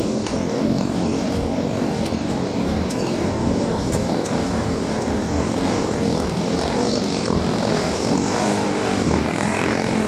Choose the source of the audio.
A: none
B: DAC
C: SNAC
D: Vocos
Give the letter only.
B